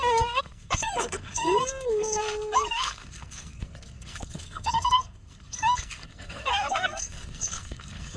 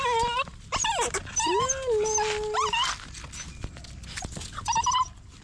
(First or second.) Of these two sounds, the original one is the second